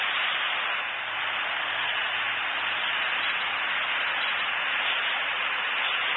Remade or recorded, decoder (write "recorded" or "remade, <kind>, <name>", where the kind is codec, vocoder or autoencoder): recorded